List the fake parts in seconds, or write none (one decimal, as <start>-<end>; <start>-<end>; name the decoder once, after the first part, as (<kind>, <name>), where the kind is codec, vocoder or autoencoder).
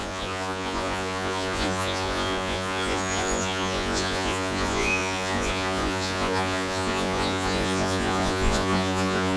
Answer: 0.0-9.4 (vocoder, Vocos)